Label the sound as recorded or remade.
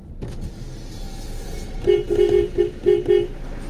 recorded